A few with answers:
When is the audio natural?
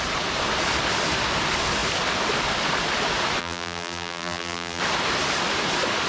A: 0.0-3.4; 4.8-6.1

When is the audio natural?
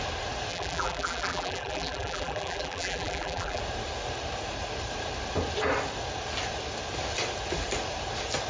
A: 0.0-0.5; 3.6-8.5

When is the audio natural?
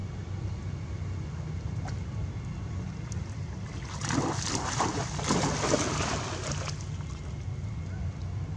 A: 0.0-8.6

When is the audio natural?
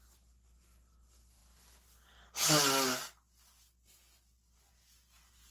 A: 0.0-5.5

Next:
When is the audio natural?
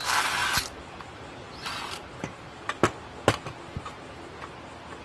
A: 0.0-0.4; 2.6-5.0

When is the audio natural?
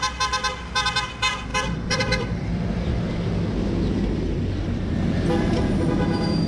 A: 0.0-1.5; 3.1-6.5